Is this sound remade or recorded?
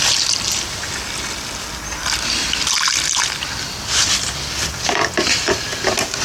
recorded